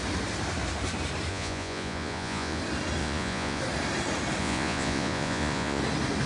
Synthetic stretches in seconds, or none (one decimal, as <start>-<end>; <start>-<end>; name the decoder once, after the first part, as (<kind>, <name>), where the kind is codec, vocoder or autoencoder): 1.3-2.6 (vocoder, Vocos); 3.0-3.6; 4.4-5.8